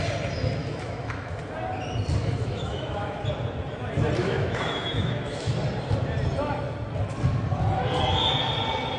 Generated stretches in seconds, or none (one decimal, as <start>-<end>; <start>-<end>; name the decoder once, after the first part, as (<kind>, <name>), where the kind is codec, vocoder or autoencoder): 0.6-1.3 (autoencoder, DAC-VAE); 2.2-3.2; 4.2-5.5